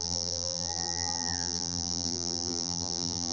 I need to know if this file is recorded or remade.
remade